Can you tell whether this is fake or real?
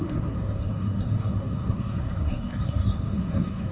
fake